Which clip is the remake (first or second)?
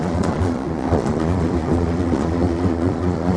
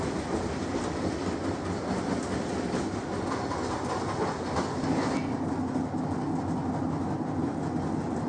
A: first